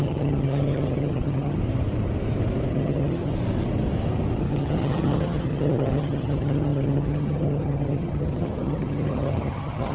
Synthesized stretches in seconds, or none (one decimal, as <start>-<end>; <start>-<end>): 0.0-1.6; 2.7-3.3; 4.4-9.9